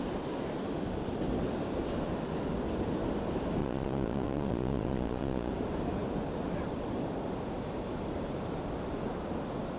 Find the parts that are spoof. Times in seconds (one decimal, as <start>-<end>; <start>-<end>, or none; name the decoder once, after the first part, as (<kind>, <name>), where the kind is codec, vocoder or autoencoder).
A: 3.6-5.5 (vocoder, Vocos)